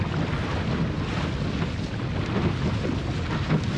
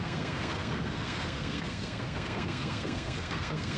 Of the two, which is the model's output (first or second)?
second